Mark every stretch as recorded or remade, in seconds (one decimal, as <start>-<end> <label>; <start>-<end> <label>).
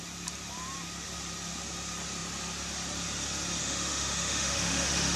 0.0-3.6 recorded; 3.6-5.2 remade